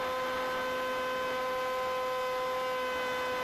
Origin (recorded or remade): recorded